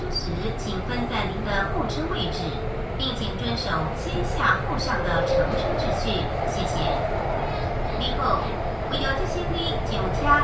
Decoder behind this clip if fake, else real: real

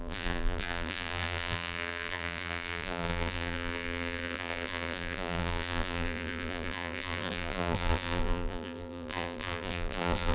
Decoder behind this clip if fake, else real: fake, vocoder, BigVGAN v2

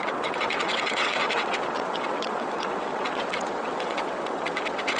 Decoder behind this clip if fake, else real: fake, vocoder, WaveNeXt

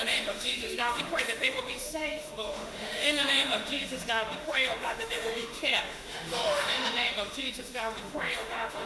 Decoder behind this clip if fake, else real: fake, autoencoder, DAC-VAE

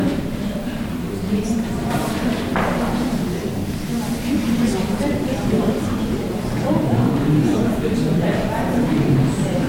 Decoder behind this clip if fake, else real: fake, vocoder, BigVGAN v2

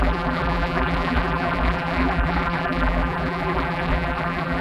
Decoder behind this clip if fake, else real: fake, vocoder, BigVGAN v2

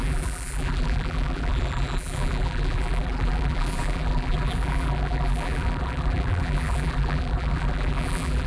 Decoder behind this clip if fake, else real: fake, vocoder, BigVGAN v2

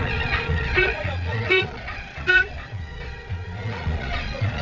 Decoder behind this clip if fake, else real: fake, vocoder, Vocos